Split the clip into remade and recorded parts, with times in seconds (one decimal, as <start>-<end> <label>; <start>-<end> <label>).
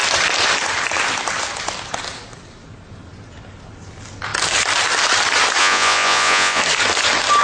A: 0.0-5.6 recorded; 5.6-6.6 remade; 6.6-7.4 recorded